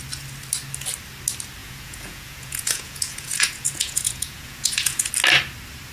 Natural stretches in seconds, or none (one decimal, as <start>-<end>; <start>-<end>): 0.0-1.6; 5.1-5.9